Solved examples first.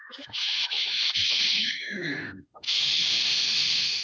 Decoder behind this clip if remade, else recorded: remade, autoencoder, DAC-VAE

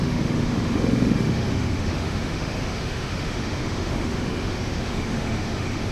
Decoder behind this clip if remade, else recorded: remade, autoencoder, DAC-VAE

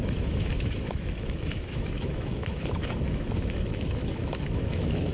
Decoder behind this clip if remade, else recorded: remade, autoencoder, DAC-VAE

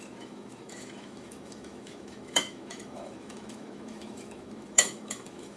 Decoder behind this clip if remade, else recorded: remade, autoencoder, DAC-VAE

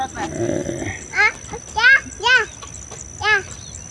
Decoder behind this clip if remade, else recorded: recorded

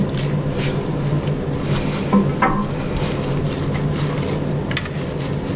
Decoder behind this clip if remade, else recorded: recorded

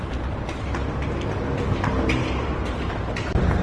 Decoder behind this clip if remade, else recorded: recorded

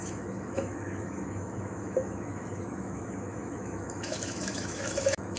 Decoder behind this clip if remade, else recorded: remade, autoencoder, DAC-VAE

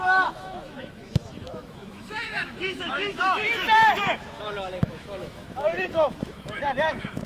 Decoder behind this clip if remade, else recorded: remade, autoencoder, DAC-VAE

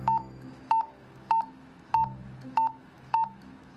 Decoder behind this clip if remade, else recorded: remade, autoencoder, DAC-VAE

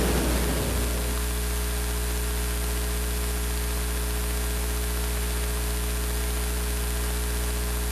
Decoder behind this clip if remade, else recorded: recorded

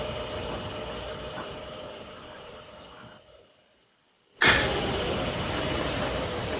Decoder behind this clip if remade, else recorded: recorded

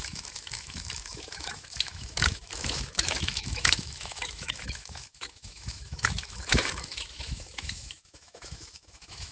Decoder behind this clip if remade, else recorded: remade, autoencoder, DAC-VAE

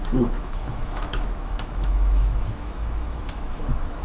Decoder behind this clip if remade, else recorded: remade, autoencoder, DAC-VAE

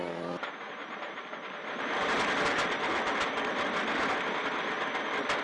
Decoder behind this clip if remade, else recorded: recorded